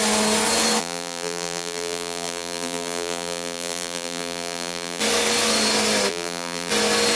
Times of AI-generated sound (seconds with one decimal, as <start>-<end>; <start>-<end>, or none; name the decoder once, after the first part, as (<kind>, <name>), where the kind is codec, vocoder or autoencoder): 0.8-5.0 (vocoder, BigVGAN v2); 6.1-6.7